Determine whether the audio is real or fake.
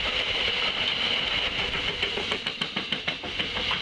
real